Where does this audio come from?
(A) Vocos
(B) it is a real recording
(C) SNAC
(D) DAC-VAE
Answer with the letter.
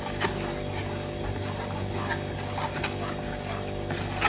B